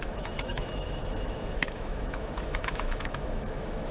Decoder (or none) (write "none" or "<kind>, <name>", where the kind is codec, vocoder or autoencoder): autoencoder, DAC-VAE